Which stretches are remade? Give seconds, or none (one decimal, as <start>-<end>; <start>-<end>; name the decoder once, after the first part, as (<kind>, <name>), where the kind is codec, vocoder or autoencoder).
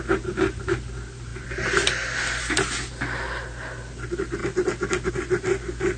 none